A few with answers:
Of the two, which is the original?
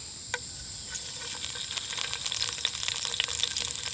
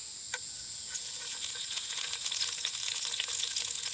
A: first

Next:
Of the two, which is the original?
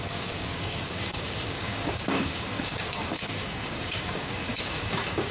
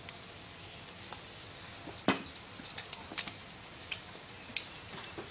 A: second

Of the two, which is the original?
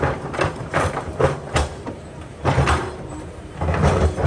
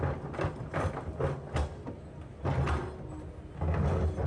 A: second